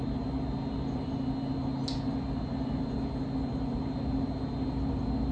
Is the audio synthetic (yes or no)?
no